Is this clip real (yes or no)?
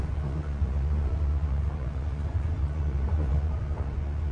no